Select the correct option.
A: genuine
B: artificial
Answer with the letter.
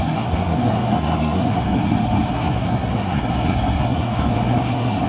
B